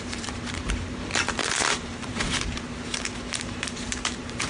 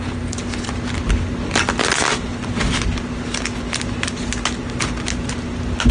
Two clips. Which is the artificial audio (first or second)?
first